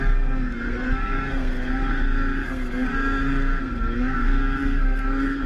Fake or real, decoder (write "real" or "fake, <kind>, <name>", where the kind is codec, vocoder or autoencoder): fake, codec, SNAC